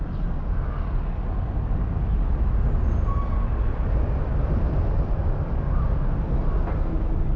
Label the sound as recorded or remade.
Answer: recorded